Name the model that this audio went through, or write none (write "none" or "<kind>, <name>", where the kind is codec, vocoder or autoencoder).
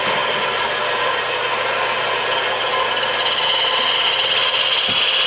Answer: none